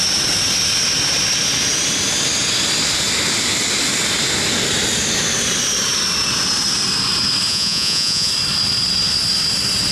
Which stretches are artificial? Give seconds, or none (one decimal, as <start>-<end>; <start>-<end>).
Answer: 7.5-8.3